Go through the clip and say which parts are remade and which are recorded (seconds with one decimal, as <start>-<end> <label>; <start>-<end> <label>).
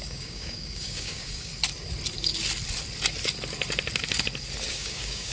0.0-1.5 remade; 1.5-4.7 recorded; 4.7-5.3 remade